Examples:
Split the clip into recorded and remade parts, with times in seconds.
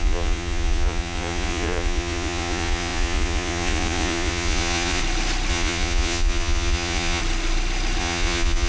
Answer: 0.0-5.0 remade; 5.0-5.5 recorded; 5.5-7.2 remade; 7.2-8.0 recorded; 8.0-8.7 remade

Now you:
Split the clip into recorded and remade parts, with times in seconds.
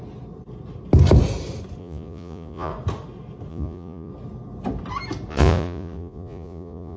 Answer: 0.0-1.8 recorded; 1.8-2.7 remade; 2.7-3.5 recorded; 3.5-4.1 remade; 4.1-5.3 recorded; 5.3-7.0 remade